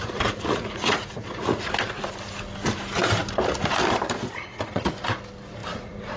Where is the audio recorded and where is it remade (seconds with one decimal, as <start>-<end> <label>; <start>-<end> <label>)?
0.0-1.7 remade; 1.7-4.2 recorded; 4.2-4.9 remade; 4.9-5.6 recorded; 5.6-6.2 remade